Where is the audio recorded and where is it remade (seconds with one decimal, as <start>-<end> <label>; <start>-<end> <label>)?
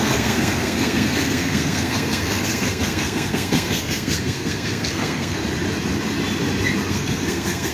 0.0-5.4 remade; 5.4-6.9 recorded; 6.9-7.7 remade